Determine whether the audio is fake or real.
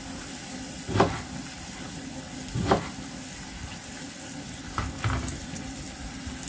real